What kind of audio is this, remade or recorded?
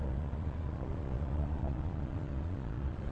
remade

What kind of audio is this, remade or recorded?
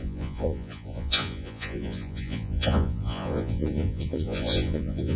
remade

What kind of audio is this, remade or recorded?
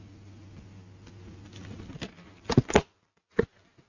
recorded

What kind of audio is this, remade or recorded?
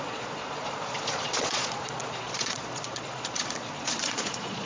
remade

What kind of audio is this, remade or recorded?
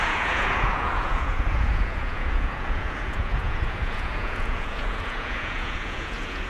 remade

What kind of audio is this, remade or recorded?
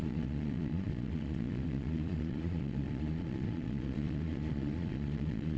remade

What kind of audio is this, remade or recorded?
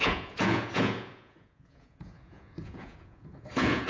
remade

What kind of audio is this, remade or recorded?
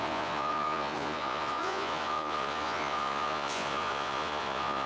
remade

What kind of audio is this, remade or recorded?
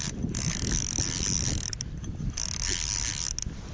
recorded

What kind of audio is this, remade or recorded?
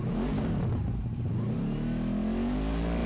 recorded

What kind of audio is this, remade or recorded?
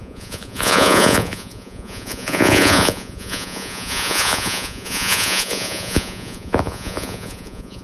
remade